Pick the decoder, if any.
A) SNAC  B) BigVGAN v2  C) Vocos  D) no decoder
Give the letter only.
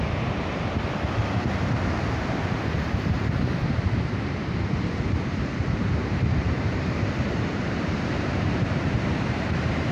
B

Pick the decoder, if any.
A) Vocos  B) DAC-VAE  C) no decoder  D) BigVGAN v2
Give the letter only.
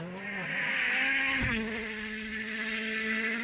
C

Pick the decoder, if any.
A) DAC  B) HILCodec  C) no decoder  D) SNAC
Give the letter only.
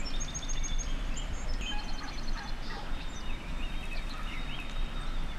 C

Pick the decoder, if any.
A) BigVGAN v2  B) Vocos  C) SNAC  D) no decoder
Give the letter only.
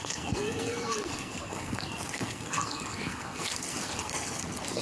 C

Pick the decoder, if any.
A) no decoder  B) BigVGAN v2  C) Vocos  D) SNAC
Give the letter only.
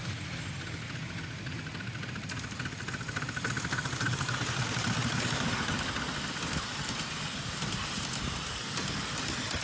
A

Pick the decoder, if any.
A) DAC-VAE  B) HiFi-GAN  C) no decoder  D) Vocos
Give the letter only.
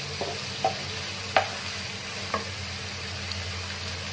C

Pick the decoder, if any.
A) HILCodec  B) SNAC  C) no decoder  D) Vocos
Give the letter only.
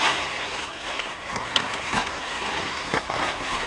B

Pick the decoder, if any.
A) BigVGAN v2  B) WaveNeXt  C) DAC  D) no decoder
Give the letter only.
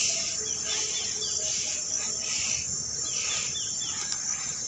D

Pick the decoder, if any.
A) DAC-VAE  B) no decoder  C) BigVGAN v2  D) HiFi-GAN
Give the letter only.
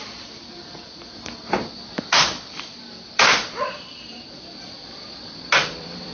C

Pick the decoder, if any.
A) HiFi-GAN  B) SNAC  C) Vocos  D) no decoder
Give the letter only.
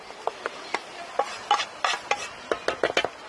D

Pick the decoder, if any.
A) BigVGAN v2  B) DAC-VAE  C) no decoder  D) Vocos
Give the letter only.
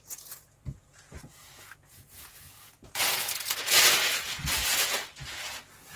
D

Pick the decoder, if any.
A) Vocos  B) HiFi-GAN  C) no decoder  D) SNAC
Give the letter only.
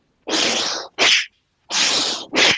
C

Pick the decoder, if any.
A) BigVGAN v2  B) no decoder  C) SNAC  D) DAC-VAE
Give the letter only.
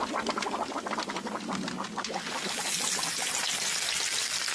B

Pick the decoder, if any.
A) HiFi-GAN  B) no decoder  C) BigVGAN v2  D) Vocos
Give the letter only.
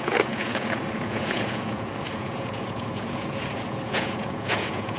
D